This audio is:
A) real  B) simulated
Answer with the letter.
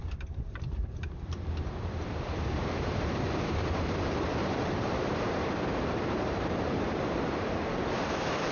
B